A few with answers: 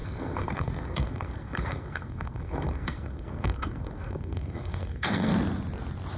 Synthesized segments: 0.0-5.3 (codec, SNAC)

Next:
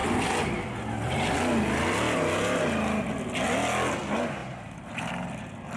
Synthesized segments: 4.4-5.1 (vocoder, BigVGAN v2)